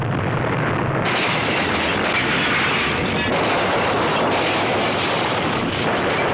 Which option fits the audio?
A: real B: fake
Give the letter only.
A